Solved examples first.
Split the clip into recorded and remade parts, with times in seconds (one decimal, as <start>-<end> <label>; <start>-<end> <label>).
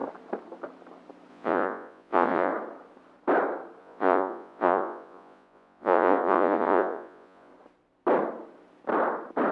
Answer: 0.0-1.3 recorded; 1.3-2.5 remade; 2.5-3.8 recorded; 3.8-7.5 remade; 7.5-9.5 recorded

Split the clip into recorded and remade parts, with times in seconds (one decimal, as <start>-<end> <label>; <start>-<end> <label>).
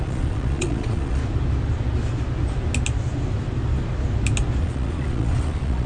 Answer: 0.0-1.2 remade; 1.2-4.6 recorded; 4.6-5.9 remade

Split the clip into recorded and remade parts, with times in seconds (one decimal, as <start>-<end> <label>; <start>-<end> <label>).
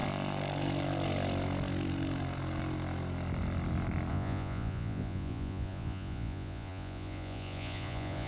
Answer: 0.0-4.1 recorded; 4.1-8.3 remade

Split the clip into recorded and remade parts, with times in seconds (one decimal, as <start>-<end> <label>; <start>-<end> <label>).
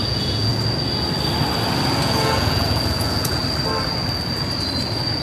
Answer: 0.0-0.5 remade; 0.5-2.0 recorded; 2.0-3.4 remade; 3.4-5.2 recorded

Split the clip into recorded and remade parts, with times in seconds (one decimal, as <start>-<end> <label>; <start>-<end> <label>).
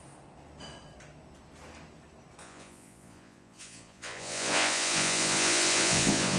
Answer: 0.0-2.4 recorded; 2.4-6.4 remade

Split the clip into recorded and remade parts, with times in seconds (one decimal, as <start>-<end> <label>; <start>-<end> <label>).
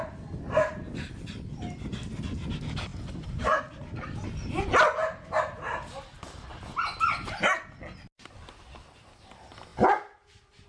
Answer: 0.0-10.7 recorded